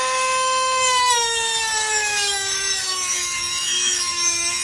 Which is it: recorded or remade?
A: remade